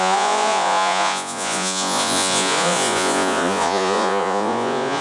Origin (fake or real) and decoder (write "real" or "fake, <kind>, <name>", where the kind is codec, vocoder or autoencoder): fake, vocoder, Vocos